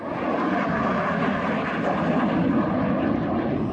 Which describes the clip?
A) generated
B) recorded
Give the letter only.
B